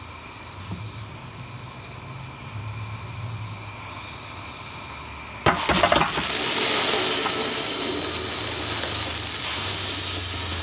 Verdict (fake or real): real